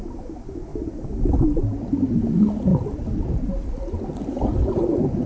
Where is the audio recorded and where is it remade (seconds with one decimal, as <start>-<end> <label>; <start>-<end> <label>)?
0.0-5.3 recorded